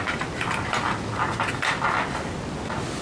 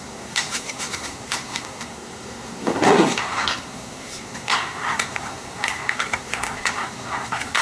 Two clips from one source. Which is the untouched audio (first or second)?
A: first